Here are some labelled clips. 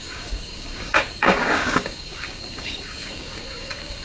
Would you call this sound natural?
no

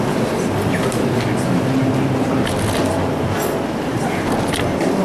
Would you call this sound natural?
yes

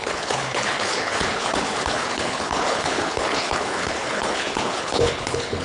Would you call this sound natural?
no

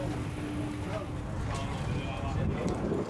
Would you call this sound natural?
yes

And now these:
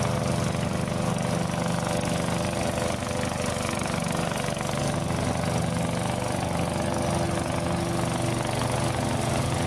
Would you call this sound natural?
yes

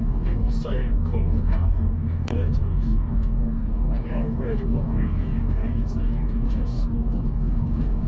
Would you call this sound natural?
no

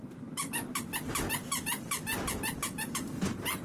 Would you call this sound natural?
yes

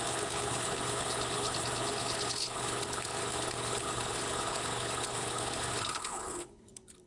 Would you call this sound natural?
no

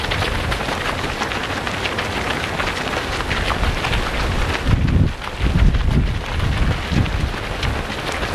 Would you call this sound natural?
yes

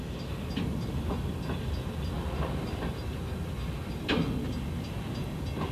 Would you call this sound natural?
yes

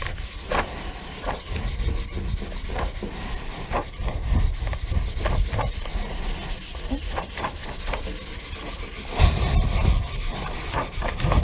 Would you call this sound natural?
yes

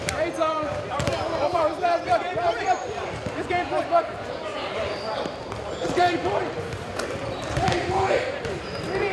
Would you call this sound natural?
no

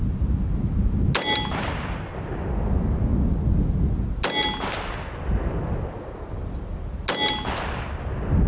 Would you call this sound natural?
yes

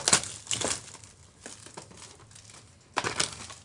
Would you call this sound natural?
yes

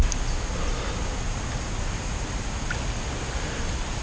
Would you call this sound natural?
yes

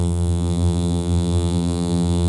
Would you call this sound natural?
no